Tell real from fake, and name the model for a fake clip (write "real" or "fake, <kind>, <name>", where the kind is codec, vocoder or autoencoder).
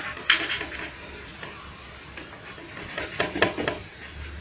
real